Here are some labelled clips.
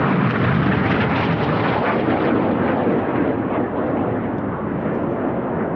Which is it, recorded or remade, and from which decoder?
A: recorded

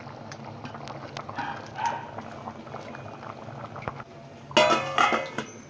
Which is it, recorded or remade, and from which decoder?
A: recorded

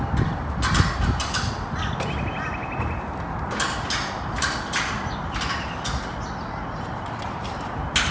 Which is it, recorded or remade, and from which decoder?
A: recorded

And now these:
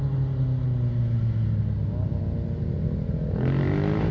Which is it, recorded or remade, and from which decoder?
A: recorded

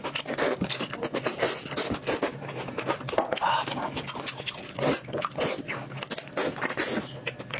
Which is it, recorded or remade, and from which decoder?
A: recorded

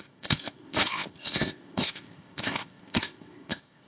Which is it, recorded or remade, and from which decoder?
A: remade, codec, ZipCodec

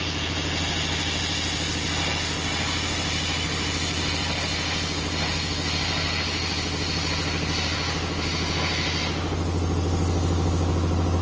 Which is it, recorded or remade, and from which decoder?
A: recorded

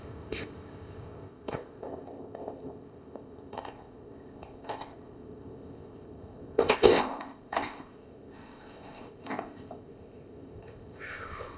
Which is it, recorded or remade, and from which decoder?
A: remade, codec, ZipCodec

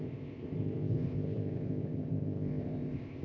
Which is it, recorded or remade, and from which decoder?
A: remade, codec, ZipCodec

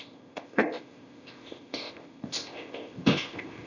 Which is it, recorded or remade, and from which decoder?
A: remade, codec, ZipCodec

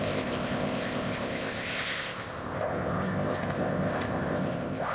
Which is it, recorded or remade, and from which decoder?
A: remade, codec, ZipCodec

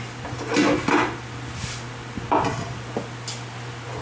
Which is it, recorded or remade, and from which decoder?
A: recorded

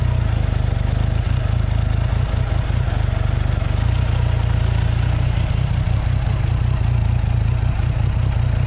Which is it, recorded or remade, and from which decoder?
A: recorded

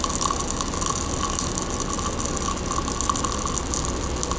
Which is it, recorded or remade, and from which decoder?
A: recorded